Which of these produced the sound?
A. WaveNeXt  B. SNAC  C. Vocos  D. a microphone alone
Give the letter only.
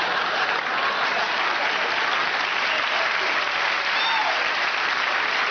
D